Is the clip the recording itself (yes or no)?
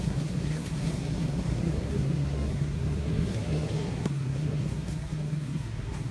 no